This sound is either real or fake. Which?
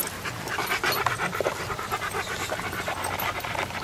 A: real